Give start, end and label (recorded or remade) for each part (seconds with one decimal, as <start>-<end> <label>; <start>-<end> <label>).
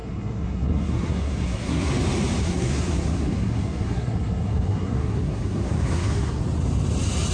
0.0-1.9 remade; 1.9-2.4 recorded; 2.4-6.4 remade; 6.4-7.3 recorded